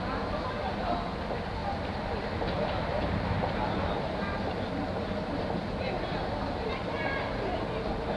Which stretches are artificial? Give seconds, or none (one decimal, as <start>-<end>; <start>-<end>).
1.6-4.5; 6.1-6.7